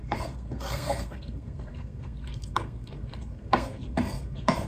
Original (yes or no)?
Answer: no